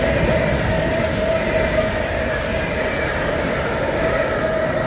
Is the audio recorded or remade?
recorded